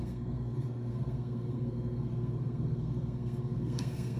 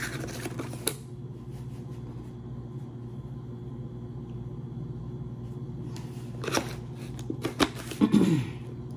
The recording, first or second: second